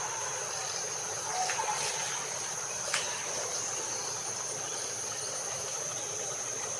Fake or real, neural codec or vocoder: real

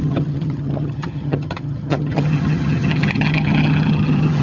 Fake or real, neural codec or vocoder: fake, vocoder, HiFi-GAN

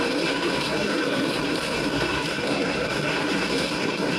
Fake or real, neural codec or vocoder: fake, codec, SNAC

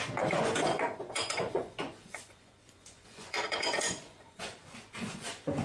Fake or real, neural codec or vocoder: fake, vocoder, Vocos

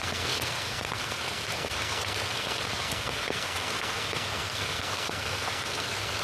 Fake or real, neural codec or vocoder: fake, codec, SNAC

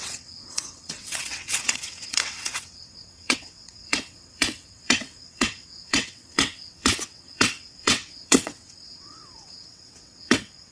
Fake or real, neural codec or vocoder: fake, vocoder, WaveNeXt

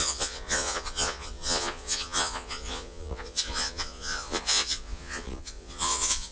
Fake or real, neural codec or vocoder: fake, vocoder, Vocos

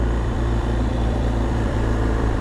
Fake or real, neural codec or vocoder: fake, vocoder, BigVGAN v2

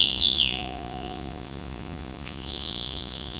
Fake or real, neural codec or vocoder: fake, vocoder, Vocos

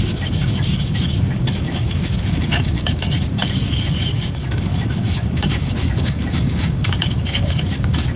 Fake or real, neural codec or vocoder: fake, codec, DAC